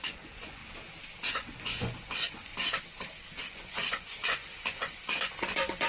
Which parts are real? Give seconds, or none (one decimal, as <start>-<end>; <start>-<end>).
0.6-1.3; 2.5-3.4